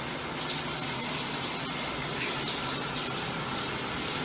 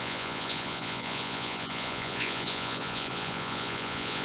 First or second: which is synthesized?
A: second